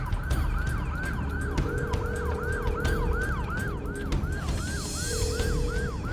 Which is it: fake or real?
real